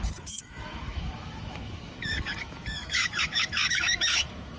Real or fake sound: fake